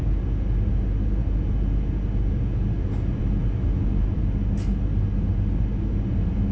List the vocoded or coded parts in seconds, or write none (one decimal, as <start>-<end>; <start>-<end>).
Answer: none